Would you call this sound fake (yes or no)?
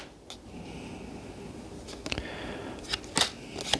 no